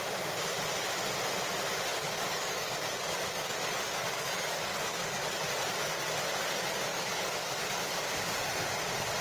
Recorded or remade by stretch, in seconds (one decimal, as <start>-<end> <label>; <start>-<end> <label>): 0.0-1.9 recorded; 1.9-5.4 remade; 5.4-6.9 recorded; 6.9-7.6 remade; 7.6-9.2 recorded